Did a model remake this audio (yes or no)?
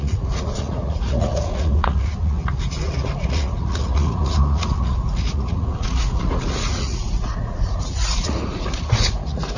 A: yes